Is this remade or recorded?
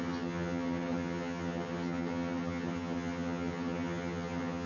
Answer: remade